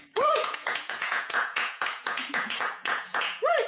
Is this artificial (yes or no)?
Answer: yes